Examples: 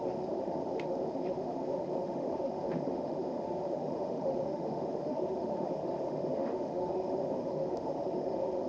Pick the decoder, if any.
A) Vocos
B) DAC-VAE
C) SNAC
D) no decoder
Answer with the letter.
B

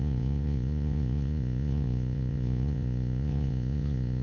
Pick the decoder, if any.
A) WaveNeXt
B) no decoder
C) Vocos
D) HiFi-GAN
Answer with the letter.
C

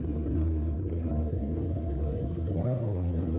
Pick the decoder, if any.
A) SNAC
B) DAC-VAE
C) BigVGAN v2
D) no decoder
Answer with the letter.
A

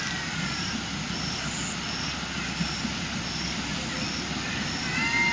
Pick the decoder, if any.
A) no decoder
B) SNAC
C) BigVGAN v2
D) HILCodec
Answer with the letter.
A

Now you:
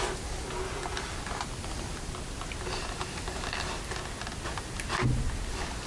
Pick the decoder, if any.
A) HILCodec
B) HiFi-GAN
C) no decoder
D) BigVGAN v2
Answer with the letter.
C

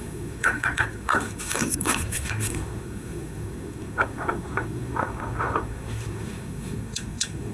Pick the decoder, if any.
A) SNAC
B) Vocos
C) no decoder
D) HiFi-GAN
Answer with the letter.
A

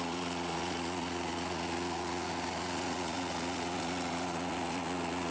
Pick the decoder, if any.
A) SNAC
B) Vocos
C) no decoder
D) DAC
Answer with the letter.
B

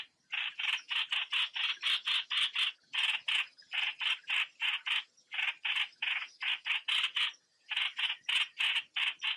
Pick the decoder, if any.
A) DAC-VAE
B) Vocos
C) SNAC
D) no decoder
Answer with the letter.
D